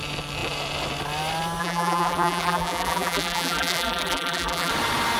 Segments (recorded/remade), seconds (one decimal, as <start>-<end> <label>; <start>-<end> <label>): 0.0-1.6 recorded; 1.6-4.7 remade; 4.7-5.2 recorded